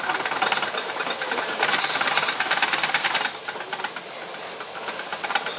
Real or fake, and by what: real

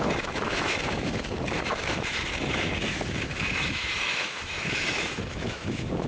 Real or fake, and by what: fake, autoencoder, DAC-VAE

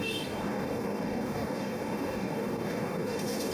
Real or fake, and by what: fake, codec, DAC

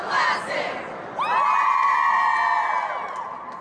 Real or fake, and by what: real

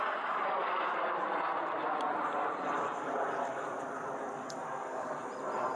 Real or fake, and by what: real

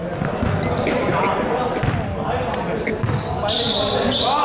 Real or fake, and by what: real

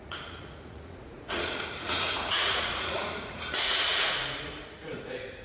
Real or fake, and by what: fake, vocoder, Vocos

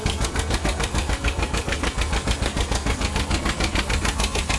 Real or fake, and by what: fake, codec, SNAC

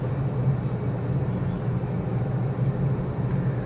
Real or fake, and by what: real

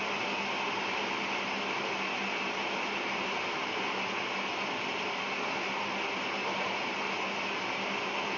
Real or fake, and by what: real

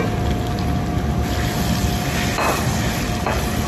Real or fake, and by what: real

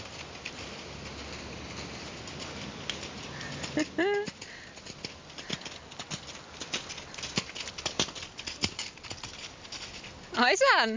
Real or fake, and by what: real